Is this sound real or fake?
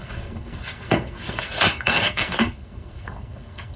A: fake